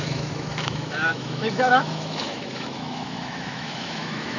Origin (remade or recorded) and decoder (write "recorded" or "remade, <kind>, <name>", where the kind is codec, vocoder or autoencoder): remade, autoencoder, DAC-VAE